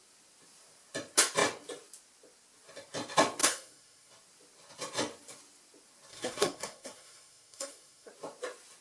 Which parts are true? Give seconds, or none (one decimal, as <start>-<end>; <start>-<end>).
0.0-3.4; 4.1-6.1; 8.1-8.8